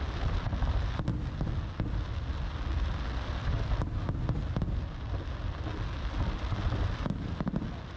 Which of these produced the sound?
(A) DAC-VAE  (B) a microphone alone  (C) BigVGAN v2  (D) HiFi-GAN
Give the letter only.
B